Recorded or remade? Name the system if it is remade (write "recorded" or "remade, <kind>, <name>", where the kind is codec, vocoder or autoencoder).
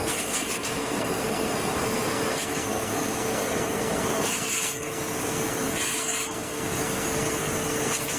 remade, codec, SNAC